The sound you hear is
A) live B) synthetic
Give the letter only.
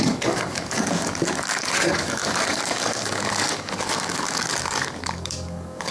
B